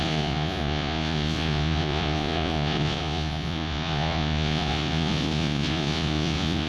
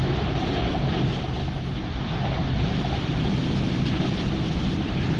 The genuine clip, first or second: second